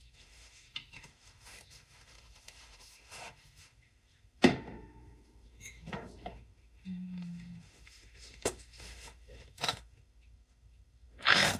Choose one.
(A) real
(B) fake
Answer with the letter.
B